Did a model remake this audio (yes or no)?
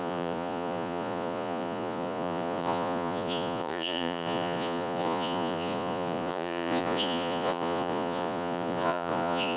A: yes